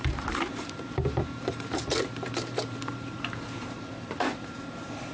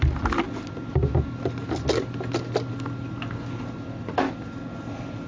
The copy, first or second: first